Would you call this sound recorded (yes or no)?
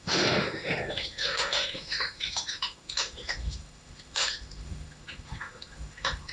no